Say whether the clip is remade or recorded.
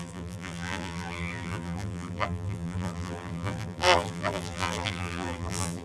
remade